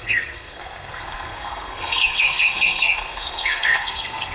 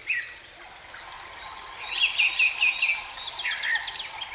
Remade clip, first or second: first